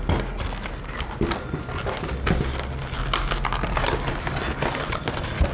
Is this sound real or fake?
real